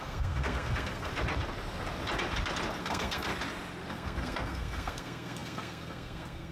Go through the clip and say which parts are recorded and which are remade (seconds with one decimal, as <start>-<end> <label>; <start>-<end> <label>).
0.0-1.1 remade; 1.1-2.8 recorded; 2.8-3.3 remade; 3.3-3.9 recorded; 3.9-6.5 remade